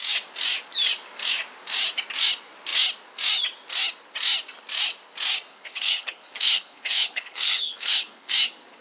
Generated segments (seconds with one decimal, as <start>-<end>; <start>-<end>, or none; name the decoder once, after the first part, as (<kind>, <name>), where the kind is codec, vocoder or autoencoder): 5.5-8.3 (codec, HILCodec)